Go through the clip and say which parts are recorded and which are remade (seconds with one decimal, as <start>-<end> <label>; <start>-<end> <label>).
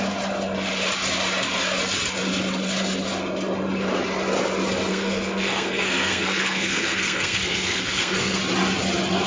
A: 0.0-4.9 recorded; 4.9-8.4 remade; 8.4-9.3 recorded